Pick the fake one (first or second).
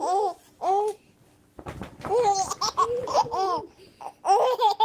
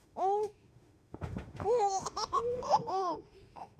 second